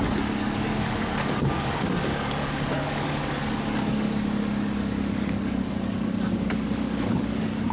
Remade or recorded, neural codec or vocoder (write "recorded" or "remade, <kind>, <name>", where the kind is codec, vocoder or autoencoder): remade, codec, DAC